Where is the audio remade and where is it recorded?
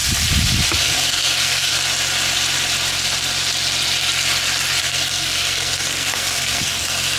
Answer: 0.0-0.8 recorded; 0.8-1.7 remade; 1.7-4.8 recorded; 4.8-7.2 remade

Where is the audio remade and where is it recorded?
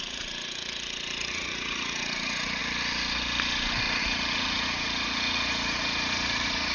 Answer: 0.0-0.6 remade; 0.6-1.3 recorded; 1.3-2.6 remade; 2.6-4.0 recorded; 4.0-6.7 remade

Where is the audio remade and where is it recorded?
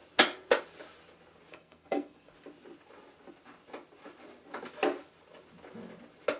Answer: 0.0-1.5 recorded; 1.5-2.3 remade; 2.3-6.4 recorded